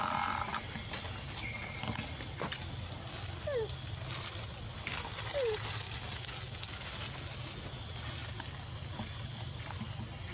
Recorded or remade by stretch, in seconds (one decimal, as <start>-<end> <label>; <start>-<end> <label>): 0.0-10.3 recorded